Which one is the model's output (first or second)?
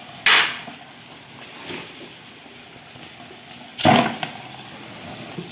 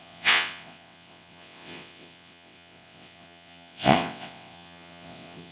second